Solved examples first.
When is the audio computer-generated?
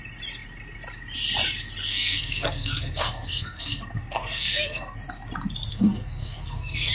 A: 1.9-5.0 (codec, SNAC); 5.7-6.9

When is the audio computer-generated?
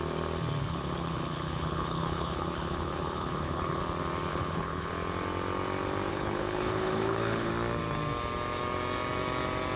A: 0.6-3.8 (codec, HILCodec); 4.3-4.9; 6.1-7.5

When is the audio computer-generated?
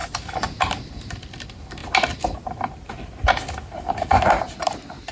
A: 0.9-1.8 (vocoder, BigVGAN v2)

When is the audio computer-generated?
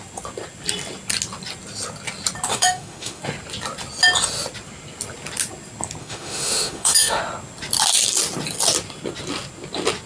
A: 2.5-3.2 (autoencoder, DAC-VAE); 6.0-7.2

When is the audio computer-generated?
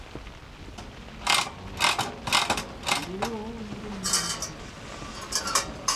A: none